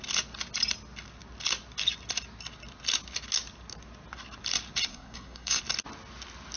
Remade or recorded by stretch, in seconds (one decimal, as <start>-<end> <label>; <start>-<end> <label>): 0.0-4.9 recorded; 4.9-5.6 remade; 5.6-6.6 recorded